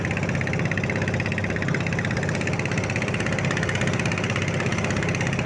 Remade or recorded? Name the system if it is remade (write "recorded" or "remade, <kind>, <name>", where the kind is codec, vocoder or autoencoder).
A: recorded